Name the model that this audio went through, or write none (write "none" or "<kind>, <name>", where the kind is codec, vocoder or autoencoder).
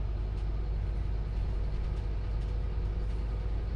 none